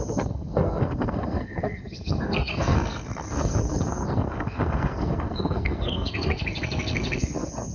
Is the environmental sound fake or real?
fake